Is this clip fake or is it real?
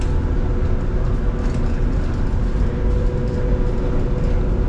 real